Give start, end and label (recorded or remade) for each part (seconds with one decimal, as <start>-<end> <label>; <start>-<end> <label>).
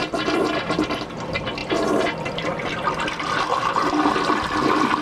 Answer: 0.0-5.0 recorded